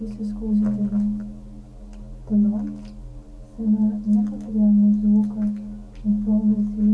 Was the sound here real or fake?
real